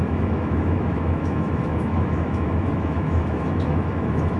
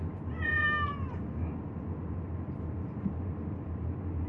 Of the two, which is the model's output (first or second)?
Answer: first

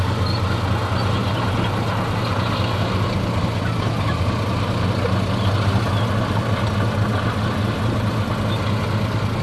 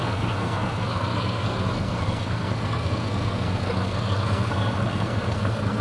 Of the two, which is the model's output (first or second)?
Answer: second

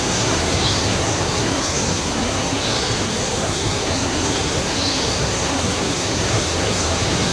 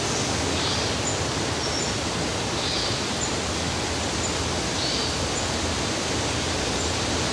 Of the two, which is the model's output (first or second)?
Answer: first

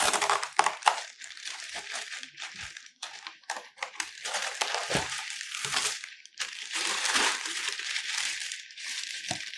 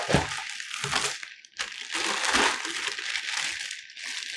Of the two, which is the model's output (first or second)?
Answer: first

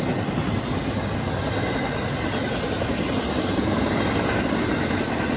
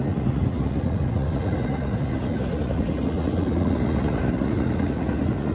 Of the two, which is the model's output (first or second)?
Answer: second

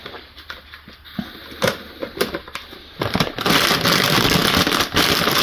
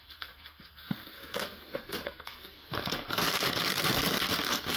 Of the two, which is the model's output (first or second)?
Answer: second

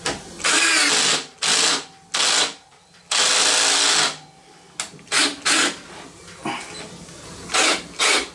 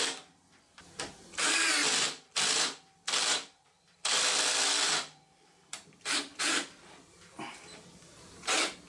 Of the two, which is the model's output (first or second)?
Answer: second